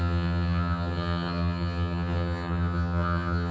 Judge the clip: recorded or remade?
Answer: remade